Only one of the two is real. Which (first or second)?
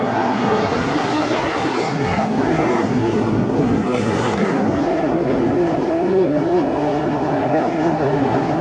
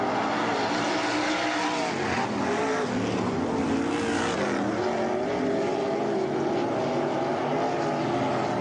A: second